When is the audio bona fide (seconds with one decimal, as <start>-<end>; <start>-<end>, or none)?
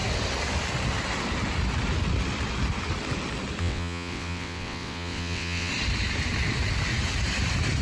0.0-3.6; 5.7-7.8